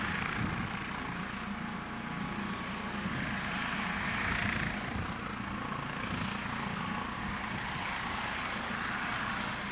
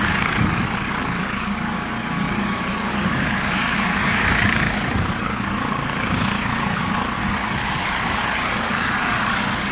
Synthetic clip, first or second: second